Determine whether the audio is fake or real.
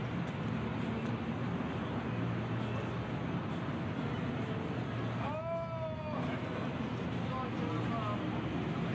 real